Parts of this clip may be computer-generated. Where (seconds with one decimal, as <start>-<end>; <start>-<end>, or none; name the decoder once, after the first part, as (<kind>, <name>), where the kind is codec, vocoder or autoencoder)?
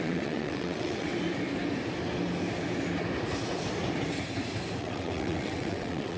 0.0-1.1 (vocoder, WaveNeXt); 4.8-6.2